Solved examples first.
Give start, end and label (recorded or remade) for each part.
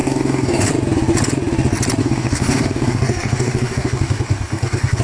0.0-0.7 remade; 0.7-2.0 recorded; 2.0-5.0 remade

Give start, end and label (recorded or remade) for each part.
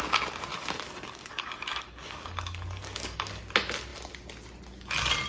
0.0-0.5 recorded; 0.5-3.4 remade; 3.4-5.3 recorded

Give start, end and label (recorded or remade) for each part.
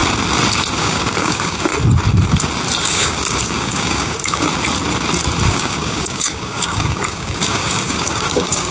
0.0-0.8 recorded; 0.8-1.7 remade; 1.7-2.8 recorded; 2.8-4.5 remade; 4.5-5.5 recorded; 5.5-8.7 remade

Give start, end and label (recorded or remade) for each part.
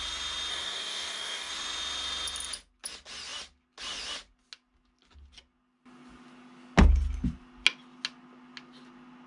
0.0-0.5 recorded; 0.5-1.5 remade; 1.5-9.3 recorded